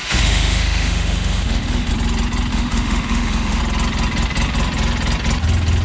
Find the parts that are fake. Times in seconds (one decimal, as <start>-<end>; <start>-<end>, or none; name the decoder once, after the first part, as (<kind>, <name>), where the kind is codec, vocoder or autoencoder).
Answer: 0.0-1.9 (autoencoder, DAC-VAE); 2.5-3.6